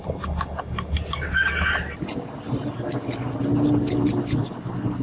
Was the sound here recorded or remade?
recorded